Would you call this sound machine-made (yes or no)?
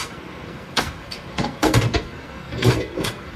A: yes